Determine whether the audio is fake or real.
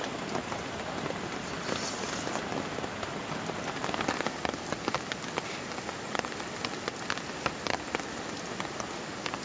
real